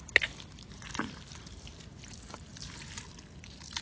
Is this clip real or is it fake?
real